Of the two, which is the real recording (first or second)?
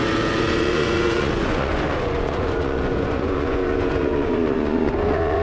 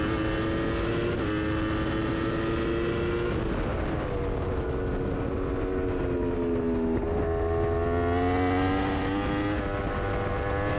second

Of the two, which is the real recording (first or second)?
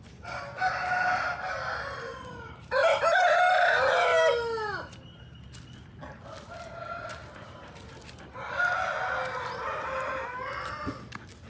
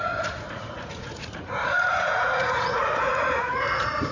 first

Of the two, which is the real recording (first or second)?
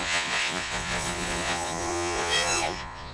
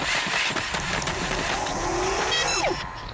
second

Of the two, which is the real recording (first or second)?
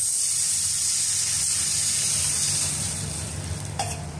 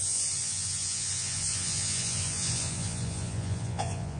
first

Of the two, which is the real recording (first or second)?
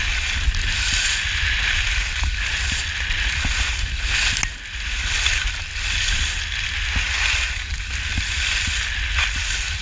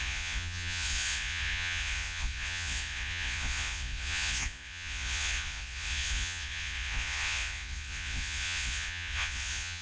first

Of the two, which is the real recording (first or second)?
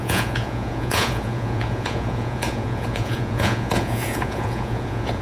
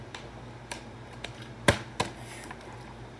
second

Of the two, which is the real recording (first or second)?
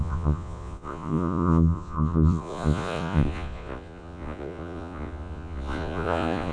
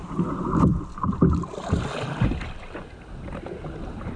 second